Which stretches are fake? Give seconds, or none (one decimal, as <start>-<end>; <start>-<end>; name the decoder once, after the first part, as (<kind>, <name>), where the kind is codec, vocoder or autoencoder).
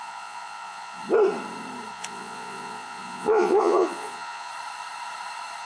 0.0-1.0 (vocoder, Vocos); 1.9-4.5